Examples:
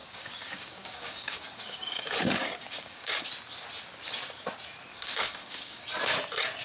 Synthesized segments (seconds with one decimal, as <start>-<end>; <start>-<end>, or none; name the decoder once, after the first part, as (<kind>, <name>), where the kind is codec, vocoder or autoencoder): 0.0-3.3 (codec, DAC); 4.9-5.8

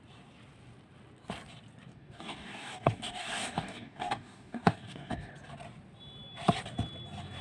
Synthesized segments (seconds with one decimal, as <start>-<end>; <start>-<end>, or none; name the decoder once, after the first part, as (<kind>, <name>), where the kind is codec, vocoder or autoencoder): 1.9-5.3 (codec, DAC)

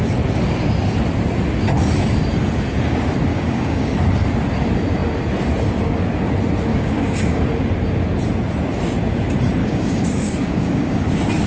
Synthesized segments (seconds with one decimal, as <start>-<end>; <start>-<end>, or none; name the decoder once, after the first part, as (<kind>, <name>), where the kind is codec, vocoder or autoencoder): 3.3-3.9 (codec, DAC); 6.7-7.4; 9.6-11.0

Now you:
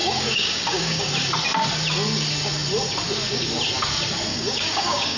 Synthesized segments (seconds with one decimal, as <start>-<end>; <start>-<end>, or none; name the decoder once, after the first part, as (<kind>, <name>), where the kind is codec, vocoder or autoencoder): 0.0-1.1 (codec, DAC); 4.3-5.2

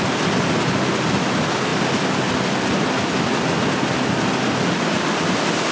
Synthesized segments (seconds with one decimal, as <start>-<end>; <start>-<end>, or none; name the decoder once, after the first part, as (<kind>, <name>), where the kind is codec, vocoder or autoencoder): none

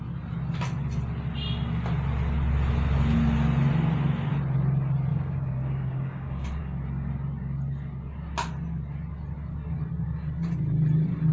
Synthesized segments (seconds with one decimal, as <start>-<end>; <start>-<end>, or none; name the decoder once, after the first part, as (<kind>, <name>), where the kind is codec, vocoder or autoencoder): 5.1-6.6 (codec, DAC)

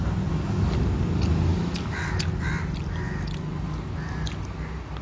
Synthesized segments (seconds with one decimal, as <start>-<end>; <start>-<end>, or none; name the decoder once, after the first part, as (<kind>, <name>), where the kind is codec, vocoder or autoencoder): none